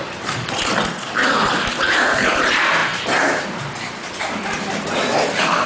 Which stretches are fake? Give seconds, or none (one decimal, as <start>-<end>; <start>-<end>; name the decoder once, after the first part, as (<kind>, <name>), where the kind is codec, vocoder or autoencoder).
0.0-1.2 (vocoder, BigVGAN v2); 1.8-5.7